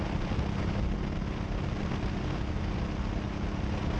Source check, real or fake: real